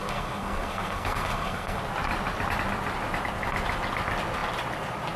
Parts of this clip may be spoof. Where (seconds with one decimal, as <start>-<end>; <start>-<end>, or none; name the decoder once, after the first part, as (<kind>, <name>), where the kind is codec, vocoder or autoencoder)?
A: 0.0-1.8 (codec, SNAC)